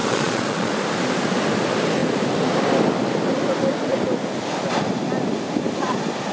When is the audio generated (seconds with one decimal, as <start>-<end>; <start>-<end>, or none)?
0.0-0.7